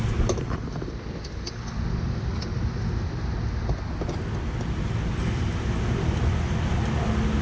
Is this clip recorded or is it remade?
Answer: recorded